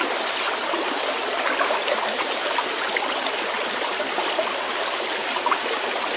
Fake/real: real